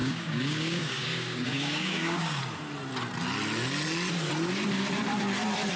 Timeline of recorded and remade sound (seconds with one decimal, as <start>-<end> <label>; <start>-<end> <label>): 0.0-2.4 remade; 2.4-5.8 recorded